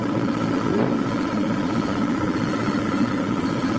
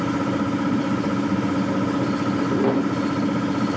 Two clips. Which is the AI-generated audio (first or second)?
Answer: first